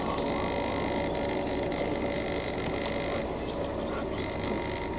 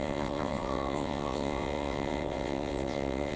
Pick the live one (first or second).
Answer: first